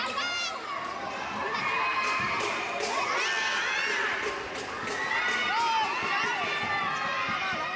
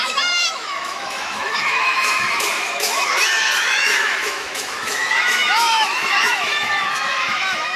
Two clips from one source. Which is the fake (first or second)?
second